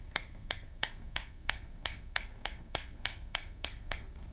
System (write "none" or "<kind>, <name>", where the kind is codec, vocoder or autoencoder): codec, SNAC